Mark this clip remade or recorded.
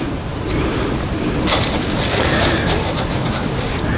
recorded